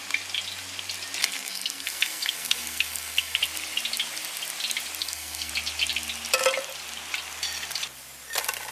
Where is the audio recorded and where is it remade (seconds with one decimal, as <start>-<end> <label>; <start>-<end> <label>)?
0.0-1.2 recorded; 1.2-3.4 remade; 3.4-5.0 recorded; 5.0-5.5 remade; 5.5-8.7 recorded